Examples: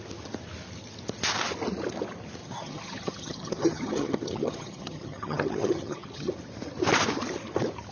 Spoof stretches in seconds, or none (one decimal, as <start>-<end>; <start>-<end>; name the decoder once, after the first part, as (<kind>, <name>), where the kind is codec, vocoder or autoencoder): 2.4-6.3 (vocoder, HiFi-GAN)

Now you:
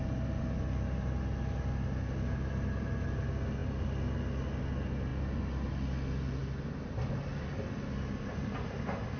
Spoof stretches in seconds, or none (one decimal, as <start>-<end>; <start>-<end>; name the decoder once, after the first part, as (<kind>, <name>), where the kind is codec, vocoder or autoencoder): none

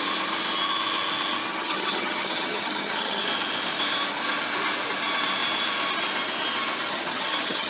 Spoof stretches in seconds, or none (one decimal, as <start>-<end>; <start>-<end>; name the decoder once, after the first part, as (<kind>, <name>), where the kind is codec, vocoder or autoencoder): 1.5-3.2 (vocoder, HiFi-GAN); 6.9-7.7

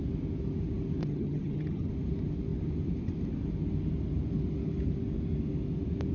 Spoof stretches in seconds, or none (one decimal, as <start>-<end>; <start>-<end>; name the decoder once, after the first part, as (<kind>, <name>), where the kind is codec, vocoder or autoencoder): 1.0-1.9 (vocoder, HiFi-GAN)

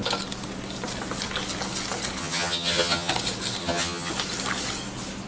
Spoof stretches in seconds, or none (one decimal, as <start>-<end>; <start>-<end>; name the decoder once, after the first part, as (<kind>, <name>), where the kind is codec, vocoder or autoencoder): 2.2-3.1 (vocoder, HiFi-GAN); 3.6-4.1

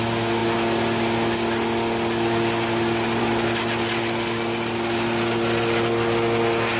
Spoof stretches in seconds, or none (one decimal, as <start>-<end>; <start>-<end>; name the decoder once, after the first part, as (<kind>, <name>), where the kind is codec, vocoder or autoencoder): none

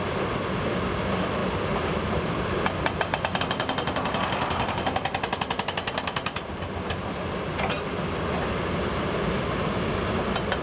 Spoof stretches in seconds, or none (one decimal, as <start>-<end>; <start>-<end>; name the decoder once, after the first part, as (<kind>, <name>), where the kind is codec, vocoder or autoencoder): none